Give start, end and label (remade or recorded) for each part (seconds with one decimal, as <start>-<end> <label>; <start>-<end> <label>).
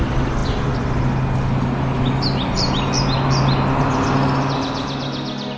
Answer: 0.0-5.6 recorded